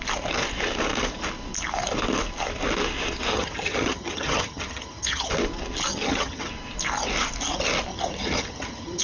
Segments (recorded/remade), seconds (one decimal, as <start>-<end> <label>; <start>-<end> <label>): 0.0-3.3 recorded; 3.3-5.3 remade; 5.3-5.9 recorded; 5.9-6.5 remade; 6.5-7.9 recorded; 7.9-9.0 remade